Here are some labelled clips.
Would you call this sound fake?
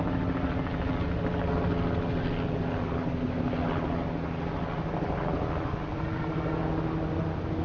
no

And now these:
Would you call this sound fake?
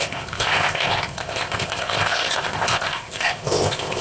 yes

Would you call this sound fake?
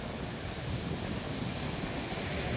no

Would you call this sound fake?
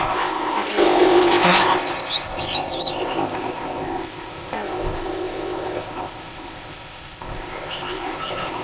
yes